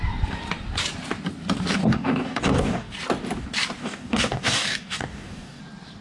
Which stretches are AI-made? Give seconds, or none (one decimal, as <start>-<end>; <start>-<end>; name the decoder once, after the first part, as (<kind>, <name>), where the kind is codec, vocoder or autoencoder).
1.8-2.9 (codec, DAC); 3.8-5.6